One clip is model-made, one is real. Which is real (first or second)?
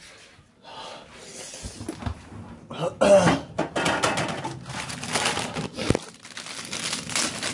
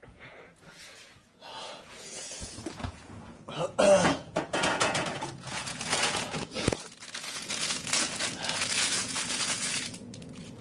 first